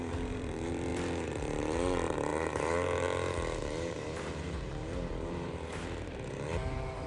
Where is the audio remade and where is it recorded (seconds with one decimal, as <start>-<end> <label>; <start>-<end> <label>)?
0.0-7.1 remade